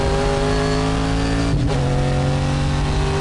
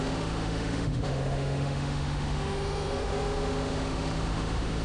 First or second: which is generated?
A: second